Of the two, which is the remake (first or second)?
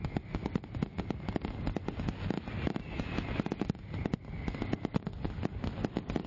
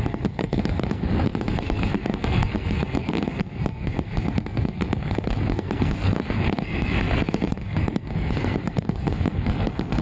second